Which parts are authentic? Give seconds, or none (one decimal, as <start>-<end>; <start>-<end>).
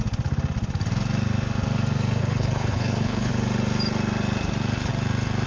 0.0-2.2; 3.3-5.5